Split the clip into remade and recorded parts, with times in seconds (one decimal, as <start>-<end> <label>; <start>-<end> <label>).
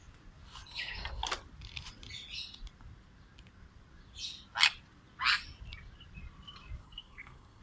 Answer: 0.0-6.8 recorded; 6.8-7.6 remade